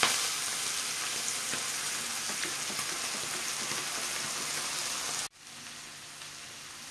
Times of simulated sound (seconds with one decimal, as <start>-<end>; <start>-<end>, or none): none